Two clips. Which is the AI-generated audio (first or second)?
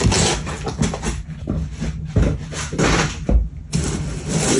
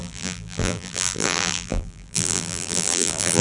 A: second